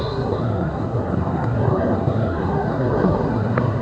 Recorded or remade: remade